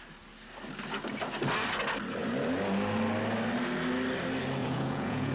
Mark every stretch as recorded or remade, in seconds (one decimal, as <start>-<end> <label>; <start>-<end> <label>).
0.0-4.6 recorded; 4.6-5.3 remade